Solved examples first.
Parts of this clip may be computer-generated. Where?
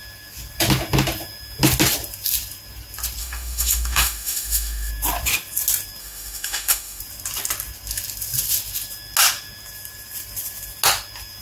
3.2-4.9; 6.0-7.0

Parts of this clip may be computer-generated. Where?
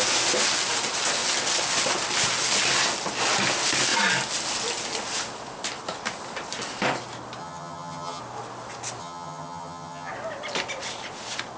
7.4-8.2; 9.0-10.1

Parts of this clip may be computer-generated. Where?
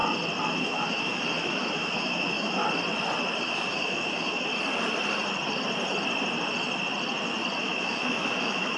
0.5-2.6; 3.4-4.5; 7.6-8.8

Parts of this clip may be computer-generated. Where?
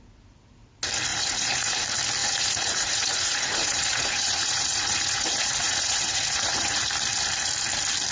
1.1-1.8; 2.2-6.9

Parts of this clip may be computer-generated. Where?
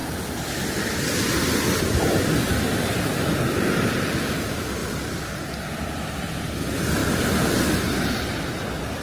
none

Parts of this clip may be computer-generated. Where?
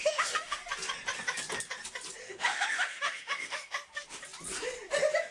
0.0-0.6; 2.3-4.2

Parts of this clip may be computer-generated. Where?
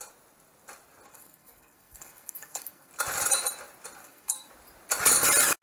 1.1-2.9; 4.0-4.5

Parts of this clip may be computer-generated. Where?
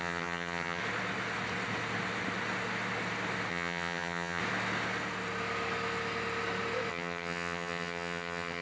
0.0-0.8; 3.5-4.4; 6.9-8.6